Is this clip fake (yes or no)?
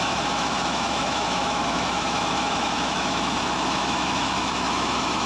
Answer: yes